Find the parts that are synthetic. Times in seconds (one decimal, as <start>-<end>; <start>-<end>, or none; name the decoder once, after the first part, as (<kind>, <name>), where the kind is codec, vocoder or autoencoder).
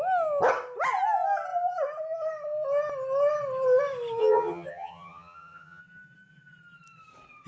4.2-5.8 (vocoder, HiFi-GAN)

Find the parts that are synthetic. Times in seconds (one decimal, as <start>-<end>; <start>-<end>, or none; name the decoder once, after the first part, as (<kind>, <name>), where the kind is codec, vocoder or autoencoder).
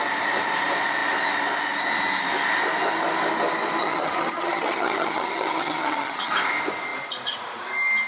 3.8-6.3 (vocoder, HiFi-GAN)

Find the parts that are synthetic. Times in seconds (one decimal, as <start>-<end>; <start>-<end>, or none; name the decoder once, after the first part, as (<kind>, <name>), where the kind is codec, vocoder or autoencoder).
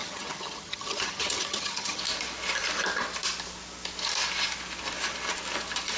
0.0-2.0 (vocoder, HiFi-GAN)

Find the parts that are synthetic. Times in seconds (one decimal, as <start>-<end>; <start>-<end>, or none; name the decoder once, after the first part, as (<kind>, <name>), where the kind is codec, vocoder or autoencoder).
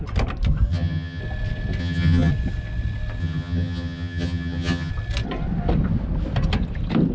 0.7-1.2 (vocoder, HiFi-GAN); 1.8-2.3; 3.2-4.9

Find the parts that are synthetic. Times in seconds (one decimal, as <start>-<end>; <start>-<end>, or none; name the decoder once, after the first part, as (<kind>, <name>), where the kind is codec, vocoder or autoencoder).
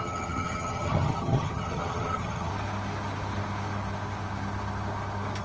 0.0-2.5 (vocoder, HiFi-GAN)